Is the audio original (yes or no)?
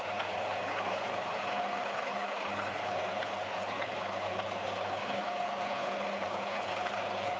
no